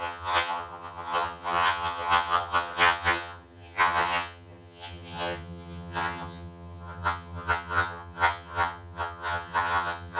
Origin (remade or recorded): remade